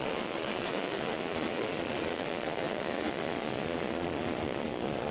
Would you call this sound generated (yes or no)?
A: yes